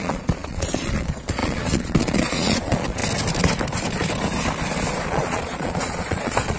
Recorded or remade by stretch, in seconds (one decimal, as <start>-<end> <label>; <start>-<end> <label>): 0.0-3.0 remade; 3.0-5.1 recorded; 5.1-6.6 remade